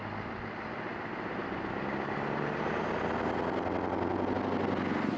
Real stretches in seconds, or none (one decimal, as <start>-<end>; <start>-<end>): 0.0-5.2